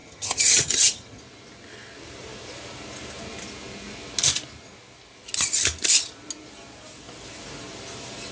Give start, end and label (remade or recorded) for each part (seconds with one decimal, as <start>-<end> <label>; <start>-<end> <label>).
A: 0.0-1.2 remade; 1.2-8.3 recorded